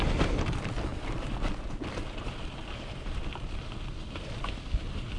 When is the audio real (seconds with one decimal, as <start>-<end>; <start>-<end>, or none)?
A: 0.0-5.2